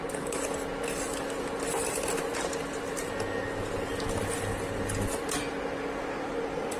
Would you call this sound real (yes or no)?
yes